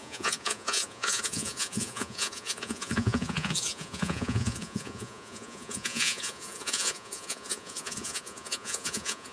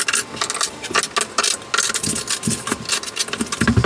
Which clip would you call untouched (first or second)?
second